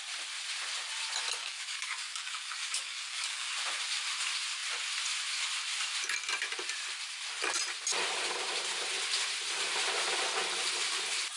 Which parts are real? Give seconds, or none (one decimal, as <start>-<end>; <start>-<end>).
0.0-1.4; 3.5-11.4